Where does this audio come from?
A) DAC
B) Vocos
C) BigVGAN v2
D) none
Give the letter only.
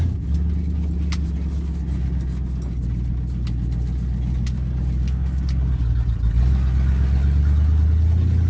D